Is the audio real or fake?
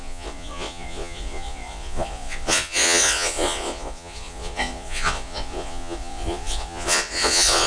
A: fake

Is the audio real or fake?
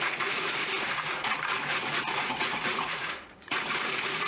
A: fake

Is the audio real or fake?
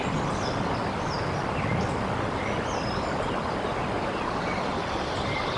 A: real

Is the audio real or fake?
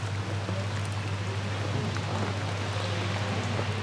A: real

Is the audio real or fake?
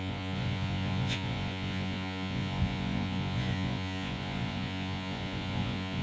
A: fake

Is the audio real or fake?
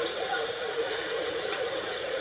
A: fake